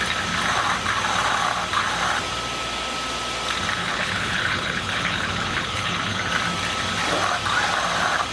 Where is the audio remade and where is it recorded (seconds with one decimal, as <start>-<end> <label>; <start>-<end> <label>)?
0.0-3.8 recorded; 3.8-6.2 remade; 6.2-8.3 recorded